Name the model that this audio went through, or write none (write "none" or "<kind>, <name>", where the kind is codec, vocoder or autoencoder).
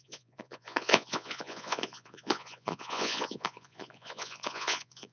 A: vocoder, Vocos